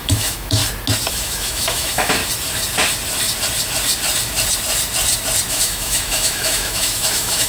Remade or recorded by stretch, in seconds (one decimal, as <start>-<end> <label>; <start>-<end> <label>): 0.0-0.6 remade; 0.6-1.1 recorded; 1.1-2.2 remade; 2.2-5.5 recorded; 5.5-7.5 remade